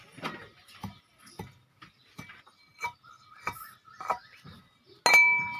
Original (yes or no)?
yes